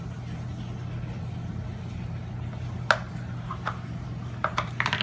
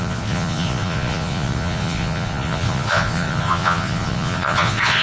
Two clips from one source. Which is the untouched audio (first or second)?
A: first